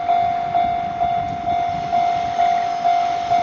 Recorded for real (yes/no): yes